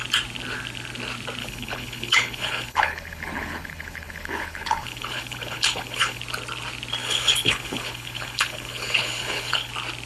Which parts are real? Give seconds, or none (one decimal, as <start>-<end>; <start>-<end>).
0.0-1.4; 6.2-7.0; 9.7-10.1